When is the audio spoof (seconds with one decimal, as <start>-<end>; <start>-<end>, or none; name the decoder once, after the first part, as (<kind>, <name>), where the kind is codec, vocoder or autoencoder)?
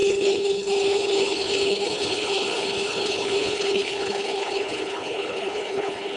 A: 0.0-6.2 (codec, HILCodec)